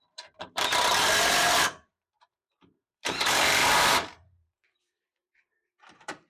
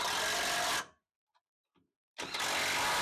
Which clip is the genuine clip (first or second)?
second